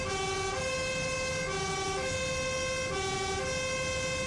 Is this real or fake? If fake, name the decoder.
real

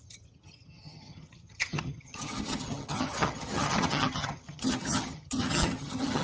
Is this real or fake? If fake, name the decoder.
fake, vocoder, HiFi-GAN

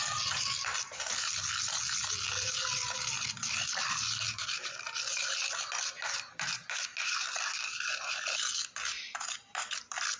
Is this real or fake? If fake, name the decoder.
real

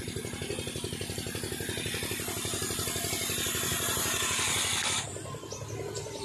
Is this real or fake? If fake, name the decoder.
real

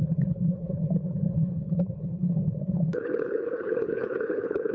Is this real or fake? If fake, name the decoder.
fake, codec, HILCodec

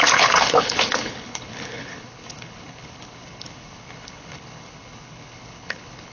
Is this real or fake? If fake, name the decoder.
fake, codec, HILCodec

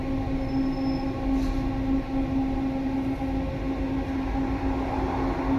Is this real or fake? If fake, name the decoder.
real